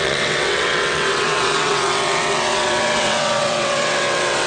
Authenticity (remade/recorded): remade